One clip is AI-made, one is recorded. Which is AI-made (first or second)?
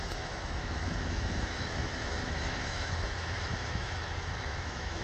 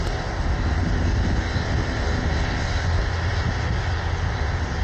first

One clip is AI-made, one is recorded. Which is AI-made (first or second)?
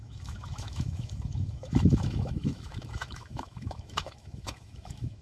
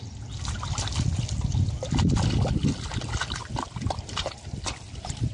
first